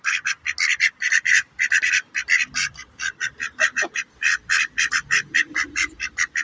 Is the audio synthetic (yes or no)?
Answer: no